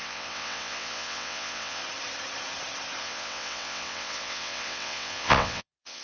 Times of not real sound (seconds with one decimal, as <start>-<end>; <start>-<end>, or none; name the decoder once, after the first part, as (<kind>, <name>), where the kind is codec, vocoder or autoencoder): 0.0-1.8 (vocoder, WaveNeXt); 3.0-6.0